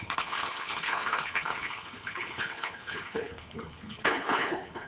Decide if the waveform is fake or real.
fake